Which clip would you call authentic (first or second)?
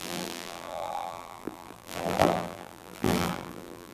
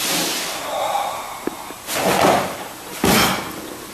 second